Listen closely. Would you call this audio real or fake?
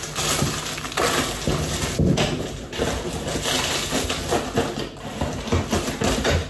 real